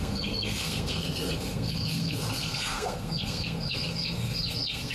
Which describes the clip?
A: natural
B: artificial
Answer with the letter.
B